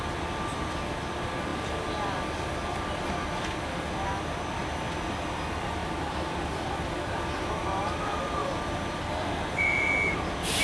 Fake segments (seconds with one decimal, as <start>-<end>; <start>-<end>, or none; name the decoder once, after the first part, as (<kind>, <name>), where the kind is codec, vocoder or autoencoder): 1.5-2.8 (vocoder, BigVGAN v2); 5.8-7.4; 8.4-9.9